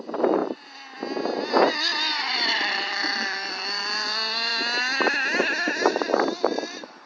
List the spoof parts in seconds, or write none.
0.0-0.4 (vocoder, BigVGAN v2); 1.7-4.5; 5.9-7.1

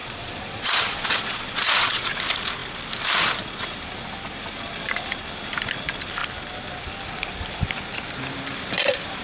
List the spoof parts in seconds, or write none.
0.0-2.1 (vocoder, Vocos)

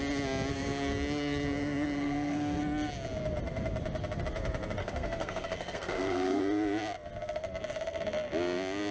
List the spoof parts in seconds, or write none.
0.5-2.6 (codec, SNAC); 4.8-6.4

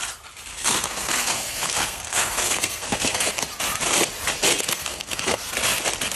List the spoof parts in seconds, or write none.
0.5-3.3 (codec, SNAC); 4.5-5.5

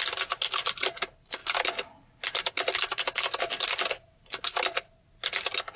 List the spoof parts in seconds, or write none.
none

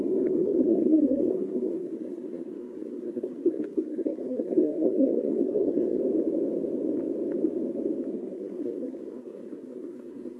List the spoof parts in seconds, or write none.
0.0-6.0 (codec, SNAC); 8.1-10.4

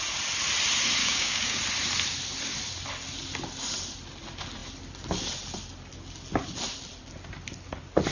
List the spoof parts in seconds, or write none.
1.0-1.6 (codec, DAC)

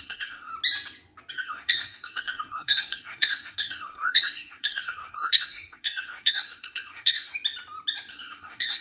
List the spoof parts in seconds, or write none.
0.0-0.5 (codec, SNAC); 1.3-7.3; 8.1-8.8